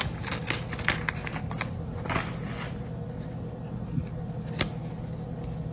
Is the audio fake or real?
real